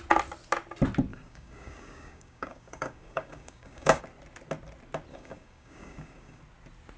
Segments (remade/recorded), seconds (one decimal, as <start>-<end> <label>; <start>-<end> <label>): 0.0-1.1 recorded; 1.1-4.0 remade; 4.0-5.1 recorded; 5.1-6.4 remade; 6.4-7.0 recorded